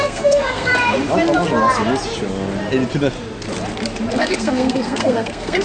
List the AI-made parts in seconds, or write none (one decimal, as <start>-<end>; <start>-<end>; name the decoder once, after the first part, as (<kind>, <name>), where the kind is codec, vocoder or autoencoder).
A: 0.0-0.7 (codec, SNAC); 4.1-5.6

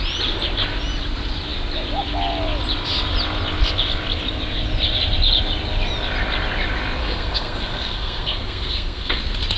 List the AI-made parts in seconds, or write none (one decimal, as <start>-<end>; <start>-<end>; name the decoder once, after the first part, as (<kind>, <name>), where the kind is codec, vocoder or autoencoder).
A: 7.0-9.2 (codec, SNAC)

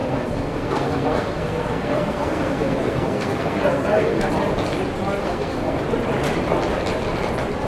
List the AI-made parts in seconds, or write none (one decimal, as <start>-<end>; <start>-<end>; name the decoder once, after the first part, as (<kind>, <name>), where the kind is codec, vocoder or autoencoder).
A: 0.0-4.3 (codec, SNAC); 5.2-5.8